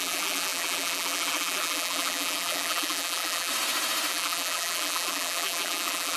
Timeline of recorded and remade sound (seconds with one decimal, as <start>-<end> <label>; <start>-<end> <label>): 0.0-3.5 remade; 3.5-4.1 recorded; 4.1-6.2 remade